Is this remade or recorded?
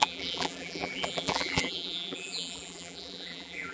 remade